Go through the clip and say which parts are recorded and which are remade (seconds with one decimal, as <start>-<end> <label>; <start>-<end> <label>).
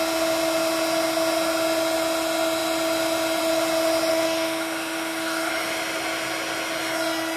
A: 0.0-4.1 recorded; 4.1-5.5 remade; 5.5-7.4 recorded